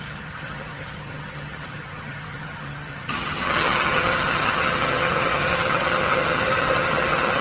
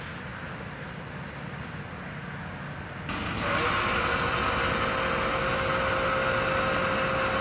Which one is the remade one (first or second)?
first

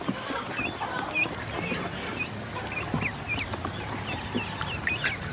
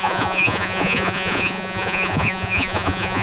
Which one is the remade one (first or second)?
second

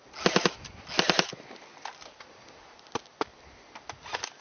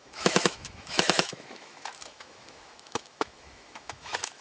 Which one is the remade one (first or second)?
second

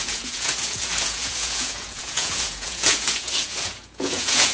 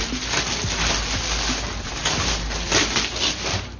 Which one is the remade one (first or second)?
first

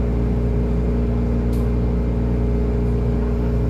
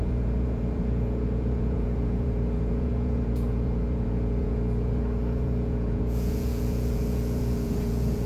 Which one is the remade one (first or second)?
second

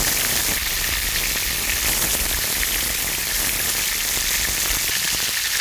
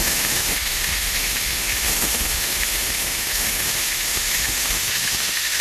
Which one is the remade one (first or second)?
second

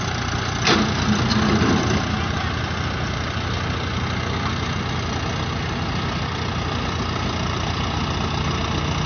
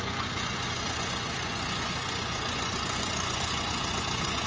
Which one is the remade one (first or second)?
second